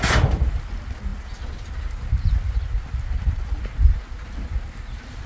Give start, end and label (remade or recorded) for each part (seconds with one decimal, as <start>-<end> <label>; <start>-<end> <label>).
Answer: 0.0-5.3 recorded